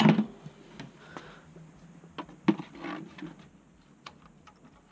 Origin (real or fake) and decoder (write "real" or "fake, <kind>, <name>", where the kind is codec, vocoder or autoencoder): real